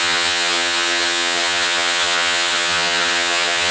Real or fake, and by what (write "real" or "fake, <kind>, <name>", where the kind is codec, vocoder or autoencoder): fake, vocoder, HiFi-GAN